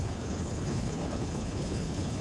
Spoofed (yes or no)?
yes